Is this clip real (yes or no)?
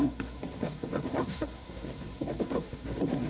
no